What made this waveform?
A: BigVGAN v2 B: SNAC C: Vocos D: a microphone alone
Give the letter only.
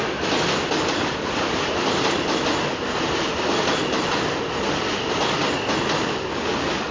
D